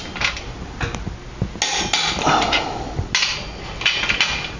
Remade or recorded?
recorded